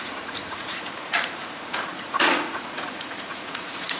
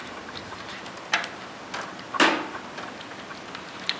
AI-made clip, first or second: first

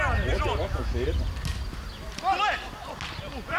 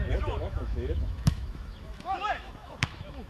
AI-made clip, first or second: second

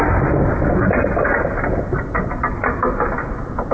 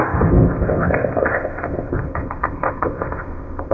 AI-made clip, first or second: second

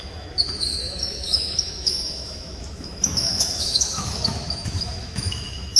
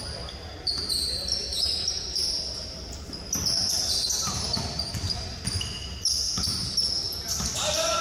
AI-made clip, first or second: first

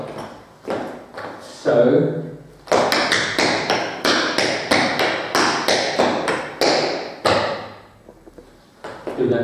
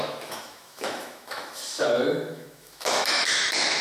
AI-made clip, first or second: second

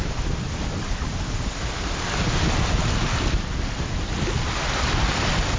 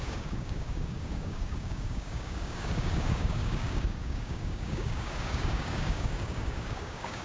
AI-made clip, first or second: second